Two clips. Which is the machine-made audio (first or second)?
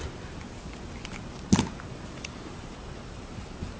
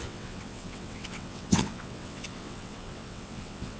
second